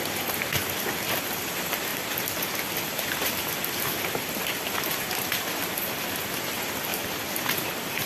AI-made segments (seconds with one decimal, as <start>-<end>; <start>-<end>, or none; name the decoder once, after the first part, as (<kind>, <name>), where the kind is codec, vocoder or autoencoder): none